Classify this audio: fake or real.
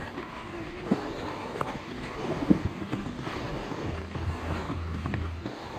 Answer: fake